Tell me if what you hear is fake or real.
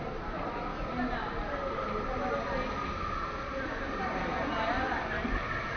real